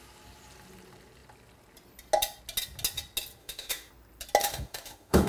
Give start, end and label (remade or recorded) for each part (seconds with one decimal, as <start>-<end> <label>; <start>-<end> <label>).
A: 0.0-3.4 recorded; 3.4-3.9 remade; 3.9-4.4 recorded; 4.4-5.3 remade